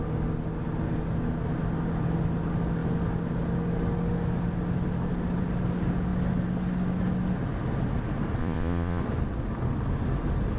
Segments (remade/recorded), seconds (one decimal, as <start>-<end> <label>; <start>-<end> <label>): 0.0-8.4 recorded; 8.4-9.0 remade; 9.0-10.6 recorded